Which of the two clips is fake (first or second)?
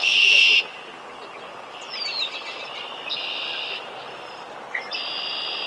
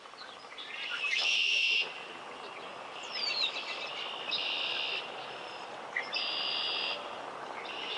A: second